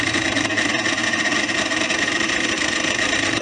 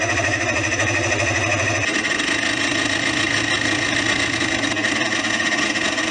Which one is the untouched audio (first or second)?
second